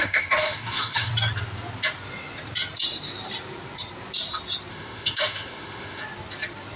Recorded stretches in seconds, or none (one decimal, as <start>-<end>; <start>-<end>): 1.1-4.7; 6.0-6.8